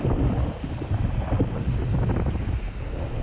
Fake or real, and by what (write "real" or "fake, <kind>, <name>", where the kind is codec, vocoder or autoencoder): real